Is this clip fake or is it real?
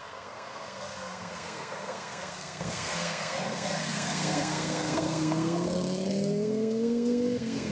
fake